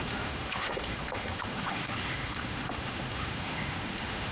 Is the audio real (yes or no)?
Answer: no